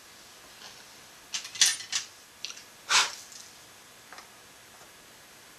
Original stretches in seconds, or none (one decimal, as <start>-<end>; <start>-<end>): 0.0-5.6